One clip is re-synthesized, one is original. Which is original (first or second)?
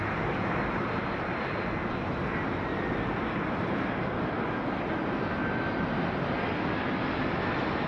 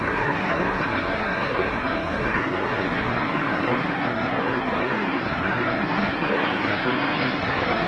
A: first